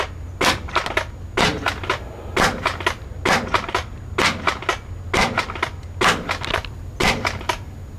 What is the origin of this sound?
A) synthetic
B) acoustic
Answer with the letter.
B